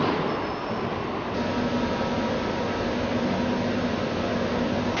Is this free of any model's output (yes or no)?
yes